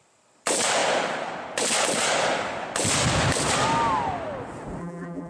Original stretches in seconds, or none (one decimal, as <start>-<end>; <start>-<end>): 0.0-4.8